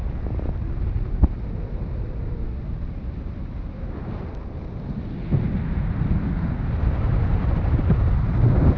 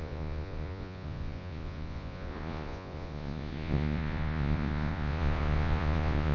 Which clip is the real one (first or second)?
first